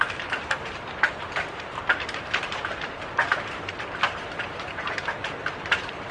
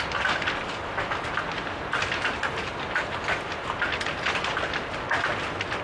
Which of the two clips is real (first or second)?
second